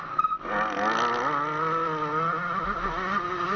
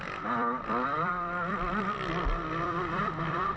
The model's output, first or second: second